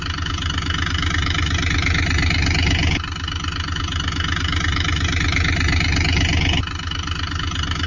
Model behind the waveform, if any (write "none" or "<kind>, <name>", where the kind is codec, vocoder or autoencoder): none